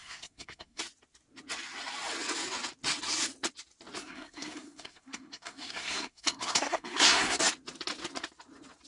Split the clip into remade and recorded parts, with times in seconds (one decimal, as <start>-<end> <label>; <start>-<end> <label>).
0.0-0.8 remade; 0.8-4.0 recorded; 4.0-7.4 remade; 7.4-8.9 recorded